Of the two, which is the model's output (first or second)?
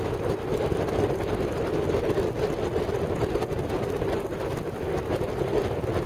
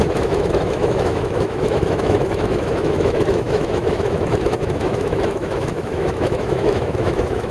second